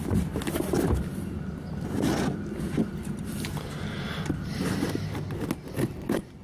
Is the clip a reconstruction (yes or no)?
no